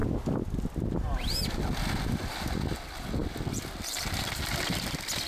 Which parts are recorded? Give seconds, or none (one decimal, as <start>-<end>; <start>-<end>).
0.0-3.2; 4.7-5.3